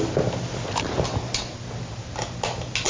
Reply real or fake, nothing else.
real